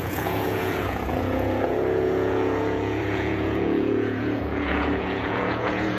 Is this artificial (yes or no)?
yes